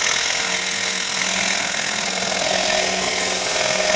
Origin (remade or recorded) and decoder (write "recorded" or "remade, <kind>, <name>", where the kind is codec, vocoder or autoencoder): remade, codec, SNAC